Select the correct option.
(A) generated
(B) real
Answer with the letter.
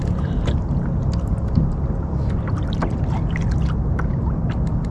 B